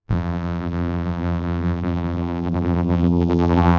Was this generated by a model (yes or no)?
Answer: yes